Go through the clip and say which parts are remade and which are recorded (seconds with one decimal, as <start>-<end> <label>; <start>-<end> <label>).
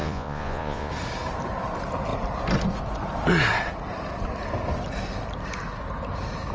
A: 0.0-0.9 remade; 0.9-6.5 recorded